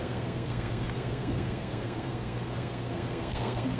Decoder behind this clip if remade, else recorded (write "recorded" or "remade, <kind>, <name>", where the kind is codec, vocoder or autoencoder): remade, codec, SNAC